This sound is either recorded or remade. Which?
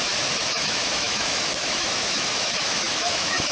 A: remade